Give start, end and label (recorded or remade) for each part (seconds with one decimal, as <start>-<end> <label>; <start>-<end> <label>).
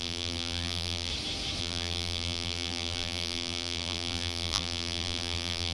0.0-1.1 remade; 1.1-1.6 recorded; 1.6-5.7 remade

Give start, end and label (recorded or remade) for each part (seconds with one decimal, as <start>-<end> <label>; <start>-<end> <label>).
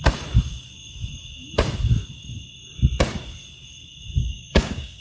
0.0-4.2 recorded; 4.2-5.0 remade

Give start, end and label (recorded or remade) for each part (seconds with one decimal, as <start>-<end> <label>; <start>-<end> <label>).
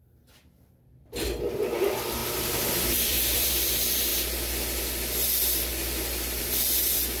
0.0-4.1 remade; 4.1-6.4 recorded; 6.4-7.2 remade